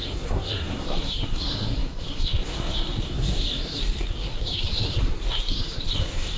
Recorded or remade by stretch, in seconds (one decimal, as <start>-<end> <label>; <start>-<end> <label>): 0.0-6.4 remade